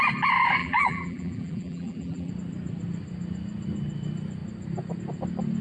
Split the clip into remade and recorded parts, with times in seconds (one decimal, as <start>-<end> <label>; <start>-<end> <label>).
0.0-0.6 recorded; 0.6-2.3 remade; 2.3-5.6 recorded